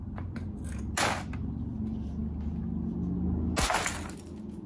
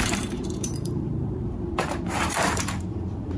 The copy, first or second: second